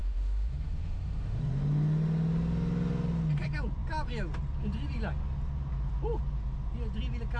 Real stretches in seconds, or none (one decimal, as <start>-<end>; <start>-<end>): 1.4-7.4

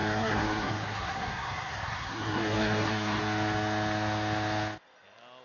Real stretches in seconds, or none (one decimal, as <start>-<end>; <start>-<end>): 3.2-5.4